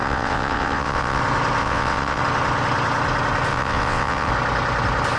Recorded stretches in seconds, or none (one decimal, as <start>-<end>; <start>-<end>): 1.2-1.6; 2.2-3.5; 4.3-5.2